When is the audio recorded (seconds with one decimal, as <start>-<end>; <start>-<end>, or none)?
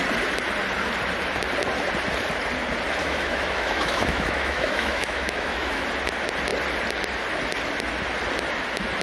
0.0-3.0; 5.8-9.0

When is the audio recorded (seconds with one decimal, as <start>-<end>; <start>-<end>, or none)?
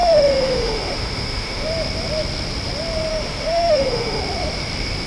1.7-3.1; 4.2-5.1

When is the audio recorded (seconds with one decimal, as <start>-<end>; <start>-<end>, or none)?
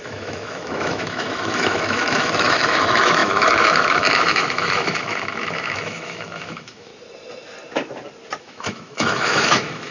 6.9-8.4